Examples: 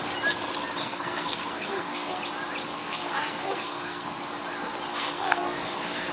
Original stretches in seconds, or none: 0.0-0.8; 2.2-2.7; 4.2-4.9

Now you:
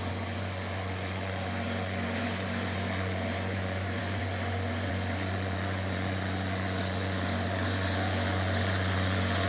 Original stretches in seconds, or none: none